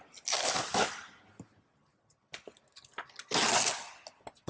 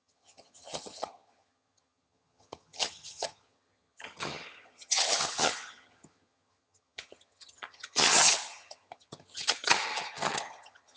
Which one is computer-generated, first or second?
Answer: second